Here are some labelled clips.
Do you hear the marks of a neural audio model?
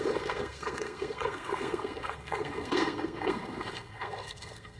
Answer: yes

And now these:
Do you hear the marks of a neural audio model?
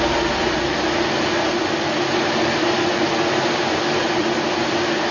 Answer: no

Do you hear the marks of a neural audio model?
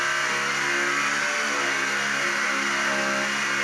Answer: no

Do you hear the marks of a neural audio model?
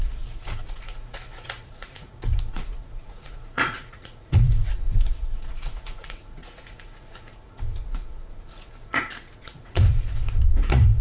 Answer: yes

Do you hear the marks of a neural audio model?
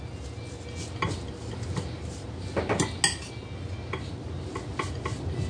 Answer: no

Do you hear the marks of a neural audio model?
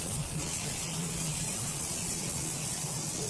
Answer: yes